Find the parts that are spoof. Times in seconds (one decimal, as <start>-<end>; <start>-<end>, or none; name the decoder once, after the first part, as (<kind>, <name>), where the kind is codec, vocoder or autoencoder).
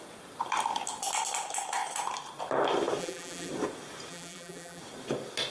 3.0-3.5 (vocoder, BigVGAN v2); 4.1-4.8